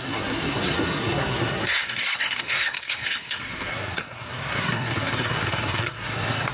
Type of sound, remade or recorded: remade